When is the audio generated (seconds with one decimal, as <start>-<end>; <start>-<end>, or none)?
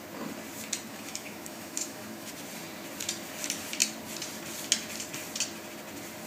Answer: 0.9-2.3